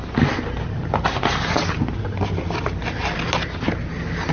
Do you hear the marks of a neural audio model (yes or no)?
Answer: no